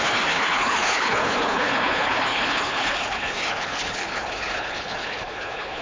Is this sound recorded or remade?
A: remade